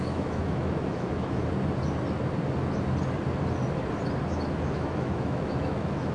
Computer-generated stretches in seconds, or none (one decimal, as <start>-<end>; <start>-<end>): 0.0-1.4; 4.6-6.1